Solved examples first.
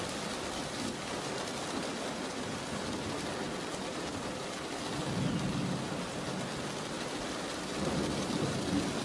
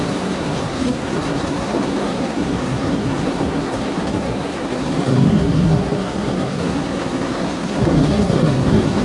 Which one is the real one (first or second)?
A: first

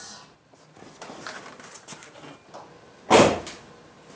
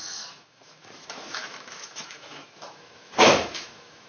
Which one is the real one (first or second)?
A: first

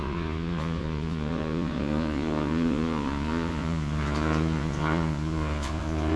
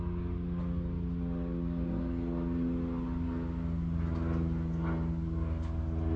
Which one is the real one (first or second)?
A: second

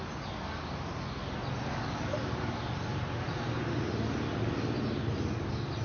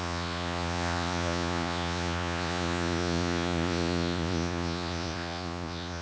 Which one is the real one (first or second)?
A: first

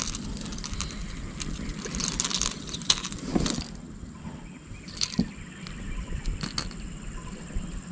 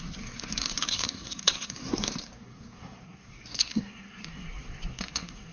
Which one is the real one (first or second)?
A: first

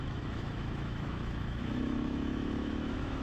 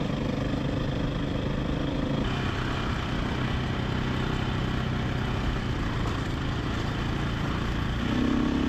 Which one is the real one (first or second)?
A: second